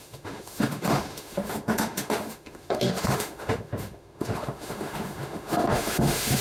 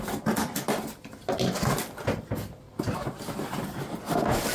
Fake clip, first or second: first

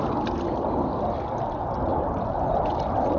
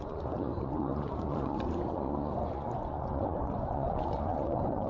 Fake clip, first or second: second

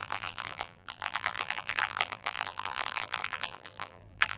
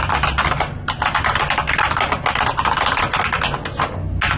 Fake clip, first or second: first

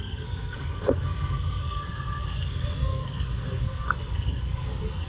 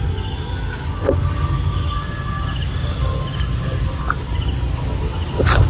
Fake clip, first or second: first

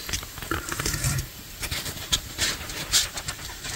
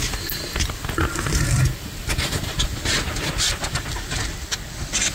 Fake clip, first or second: first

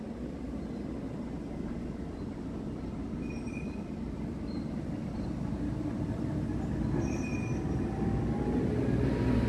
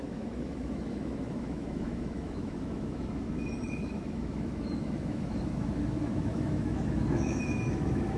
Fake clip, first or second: second